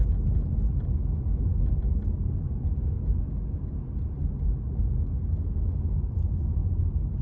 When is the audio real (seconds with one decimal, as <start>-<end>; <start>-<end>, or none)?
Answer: 0.0-7.2